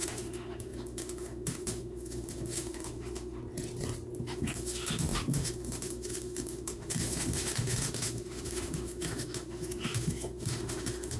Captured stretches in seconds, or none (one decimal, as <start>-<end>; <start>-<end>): 3.4-4.2